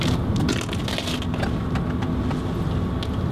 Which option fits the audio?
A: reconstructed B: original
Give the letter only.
B